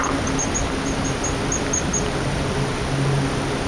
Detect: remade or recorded recorded